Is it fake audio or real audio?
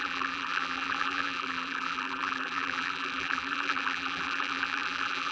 fake